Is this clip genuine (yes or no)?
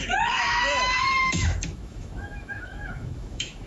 no